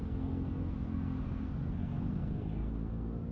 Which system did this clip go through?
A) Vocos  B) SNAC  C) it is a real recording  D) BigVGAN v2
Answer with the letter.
B